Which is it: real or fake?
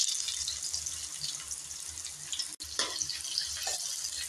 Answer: real